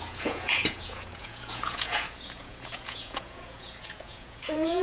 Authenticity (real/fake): fake